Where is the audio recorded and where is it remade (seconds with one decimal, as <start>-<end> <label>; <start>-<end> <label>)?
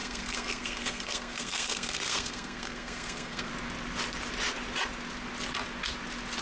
0.0-3.5 remade; 3.5-6.4 recorded